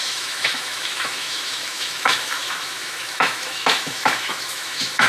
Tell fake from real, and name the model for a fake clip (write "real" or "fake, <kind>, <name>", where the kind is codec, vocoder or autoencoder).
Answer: fake, autoencoder, DAC-VAE